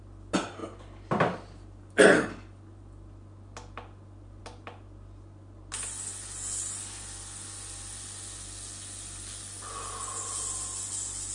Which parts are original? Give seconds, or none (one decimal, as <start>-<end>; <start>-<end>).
0.0-11.3